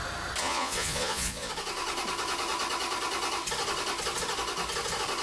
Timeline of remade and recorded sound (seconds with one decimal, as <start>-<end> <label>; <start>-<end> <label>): 0.0-0.4 recorded; 0.4-1.5 remade; 1.5-5.2 recorded